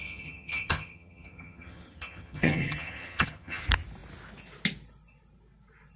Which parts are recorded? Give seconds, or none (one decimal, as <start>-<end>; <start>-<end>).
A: 3.6-6.0

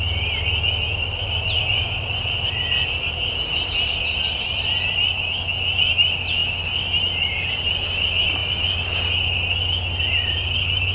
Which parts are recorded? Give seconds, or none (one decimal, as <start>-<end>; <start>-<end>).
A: 0.0-10.9

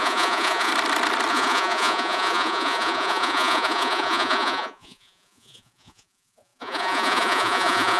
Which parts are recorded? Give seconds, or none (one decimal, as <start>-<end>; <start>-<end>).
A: 0.7-1.3

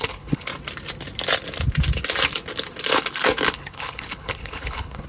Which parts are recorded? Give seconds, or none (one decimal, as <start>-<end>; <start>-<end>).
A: 0.5-3.5